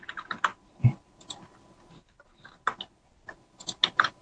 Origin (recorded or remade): recorded